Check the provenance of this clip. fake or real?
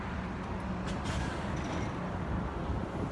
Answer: real